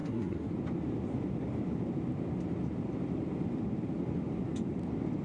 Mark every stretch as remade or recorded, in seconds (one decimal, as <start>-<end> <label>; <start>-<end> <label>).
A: 0.0-0.5 remade; 0.5-5.2 recorded